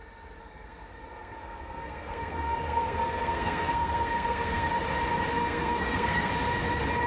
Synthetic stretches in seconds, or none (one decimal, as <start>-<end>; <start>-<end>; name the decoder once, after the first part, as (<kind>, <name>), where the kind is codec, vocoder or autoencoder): 0.4-4.7 (codec, SNAC); 5.3-6.3